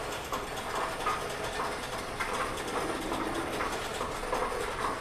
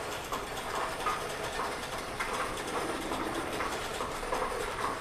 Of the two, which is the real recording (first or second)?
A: first